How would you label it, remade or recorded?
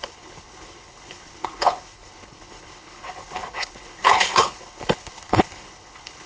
remade